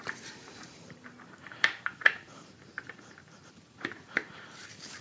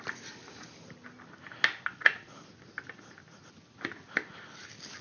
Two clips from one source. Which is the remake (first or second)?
first